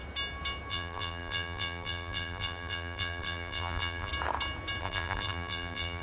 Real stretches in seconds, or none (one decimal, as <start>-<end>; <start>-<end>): 0.0-0.7; 4.1-4.8